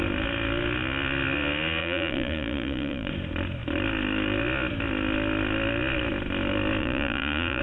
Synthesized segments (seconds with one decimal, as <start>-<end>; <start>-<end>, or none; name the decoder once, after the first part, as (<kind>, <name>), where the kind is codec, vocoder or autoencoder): 1.8-3.1 (vocoder, Vocos); 6.8-7.6